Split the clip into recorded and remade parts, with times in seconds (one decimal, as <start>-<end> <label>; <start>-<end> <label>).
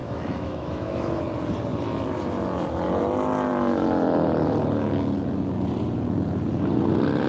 0.0-1.2 remade; 1.2-7.3 recorded